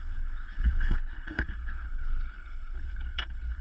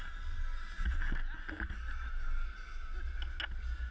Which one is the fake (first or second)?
first